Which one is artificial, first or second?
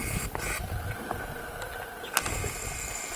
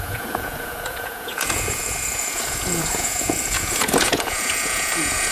second